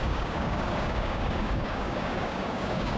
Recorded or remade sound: remade